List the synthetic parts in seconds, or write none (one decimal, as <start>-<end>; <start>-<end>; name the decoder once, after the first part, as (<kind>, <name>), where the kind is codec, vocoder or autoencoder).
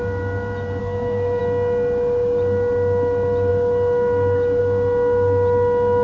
0.8-1.4 (codec, SNAC)